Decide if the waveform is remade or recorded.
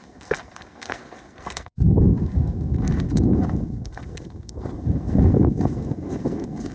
remade